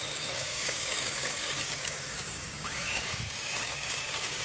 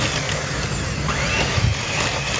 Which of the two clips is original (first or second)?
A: second